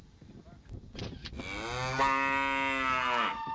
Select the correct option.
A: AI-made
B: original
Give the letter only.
B